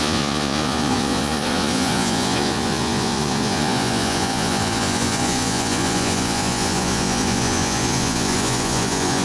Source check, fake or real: fake